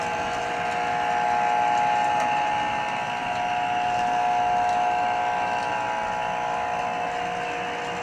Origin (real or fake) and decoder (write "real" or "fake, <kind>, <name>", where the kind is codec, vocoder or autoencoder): real